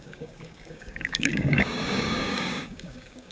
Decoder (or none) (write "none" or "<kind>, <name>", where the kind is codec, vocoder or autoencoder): codec, DAC